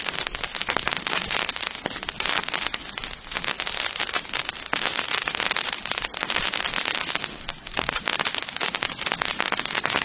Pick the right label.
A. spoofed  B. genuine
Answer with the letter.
B